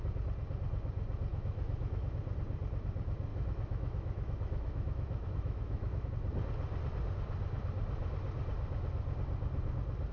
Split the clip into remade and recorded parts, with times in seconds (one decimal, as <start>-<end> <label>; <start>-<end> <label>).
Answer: 0.0-1.3 recorded; 1.3-2.1 remade; 2.1-3.3 recorded; 3.3-6.1 remade; 6.1-10.1 recorded